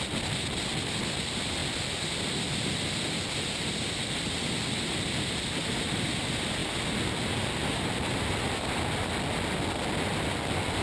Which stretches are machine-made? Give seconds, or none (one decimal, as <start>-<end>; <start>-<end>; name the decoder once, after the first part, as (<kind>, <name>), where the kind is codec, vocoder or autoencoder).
none